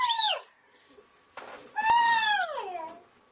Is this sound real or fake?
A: real